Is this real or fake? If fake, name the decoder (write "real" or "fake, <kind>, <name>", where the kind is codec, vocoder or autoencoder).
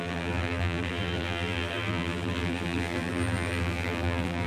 fake, vocoder, BigVGAN v2